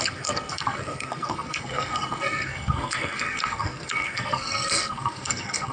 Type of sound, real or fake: fake